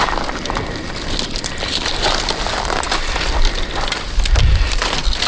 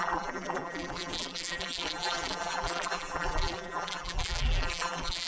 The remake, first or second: second